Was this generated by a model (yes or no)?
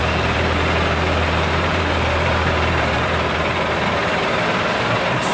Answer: yes